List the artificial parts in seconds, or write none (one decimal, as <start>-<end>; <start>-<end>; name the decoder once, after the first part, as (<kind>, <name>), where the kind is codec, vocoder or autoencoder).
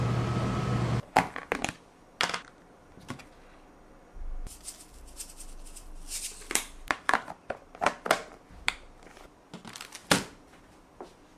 none